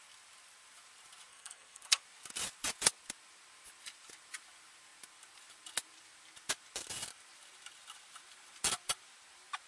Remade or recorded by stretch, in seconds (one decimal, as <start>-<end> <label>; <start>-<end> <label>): 0.0-1.3 recorded; 1.3-2.0 remade; 2.0-9.7 recorded